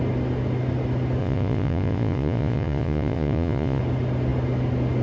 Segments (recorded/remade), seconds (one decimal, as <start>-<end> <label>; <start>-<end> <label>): 0.0-1.2 recorded; 1.2-3.8 remade; 3.8-5.0 recorded